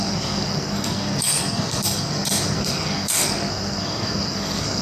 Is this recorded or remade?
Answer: remade